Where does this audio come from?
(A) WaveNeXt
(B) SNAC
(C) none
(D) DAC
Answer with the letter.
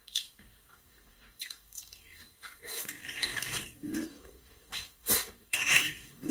D